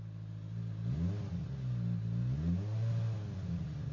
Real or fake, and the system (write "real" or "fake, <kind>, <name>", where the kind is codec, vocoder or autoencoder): real